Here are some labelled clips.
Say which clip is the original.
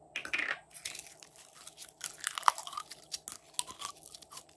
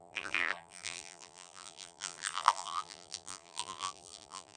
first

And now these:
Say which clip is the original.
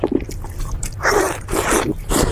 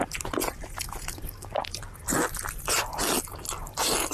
second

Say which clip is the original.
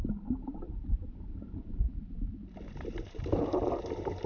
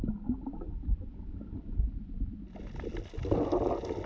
second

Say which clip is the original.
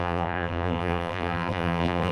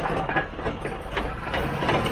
second